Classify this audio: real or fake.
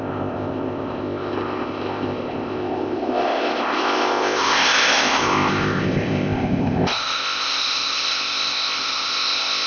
fake